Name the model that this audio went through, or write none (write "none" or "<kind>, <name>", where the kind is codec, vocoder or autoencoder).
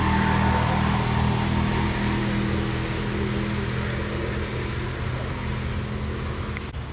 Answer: none